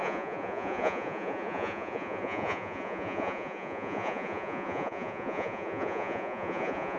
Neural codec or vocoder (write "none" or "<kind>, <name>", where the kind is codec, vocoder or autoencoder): vocoder, Vocos